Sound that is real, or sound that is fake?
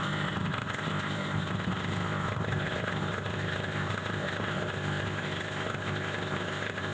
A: fake